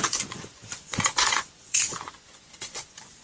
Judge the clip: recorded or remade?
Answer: remade